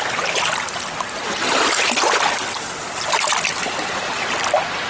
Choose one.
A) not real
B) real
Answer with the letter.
B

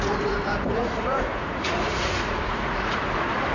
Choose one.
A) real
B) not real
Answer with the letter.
B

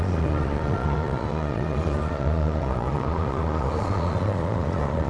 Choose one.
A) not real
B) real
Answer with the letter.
A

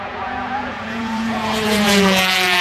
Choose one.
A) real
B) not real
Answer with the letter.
B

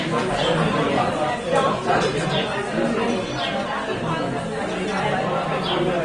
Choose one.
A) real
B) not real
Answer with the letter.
A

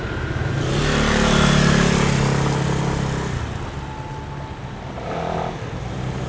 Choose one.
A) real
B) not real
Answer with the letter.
A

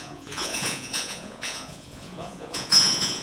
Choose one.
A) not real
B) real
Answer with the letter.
A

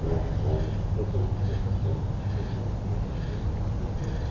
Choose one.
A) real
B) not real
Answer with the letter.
A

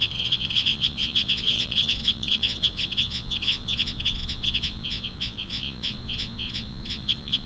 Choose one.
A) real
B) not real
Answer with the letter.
B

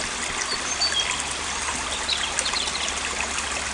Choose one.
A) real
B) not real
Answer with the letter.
A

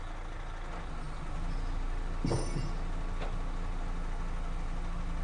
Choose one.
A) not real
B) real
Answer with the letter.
B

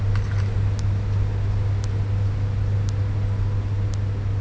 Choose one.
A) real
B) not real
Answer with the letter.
A